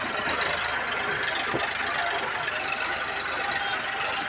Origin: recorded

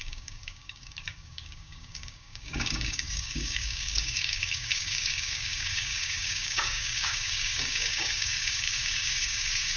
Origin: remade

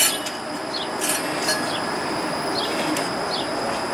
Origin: recorded